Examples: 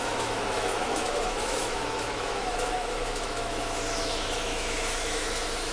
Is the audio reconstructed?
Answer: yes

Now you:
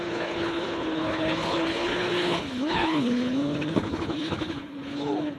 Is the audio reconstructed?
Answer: yes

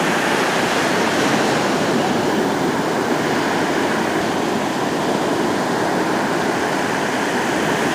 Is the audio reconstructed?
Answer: no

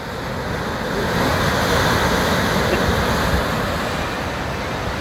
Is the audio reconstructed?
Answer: no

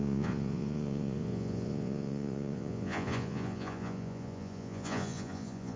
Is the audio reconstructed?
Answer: yes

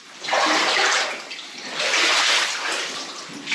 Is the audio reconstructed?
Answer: no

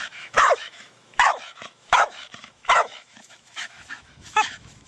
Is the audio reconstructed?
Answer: yes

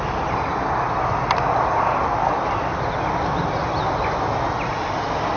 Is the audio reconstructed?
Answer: no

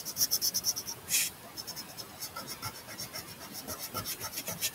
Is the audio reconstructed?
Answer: no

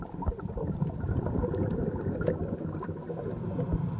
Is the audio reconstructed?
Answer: no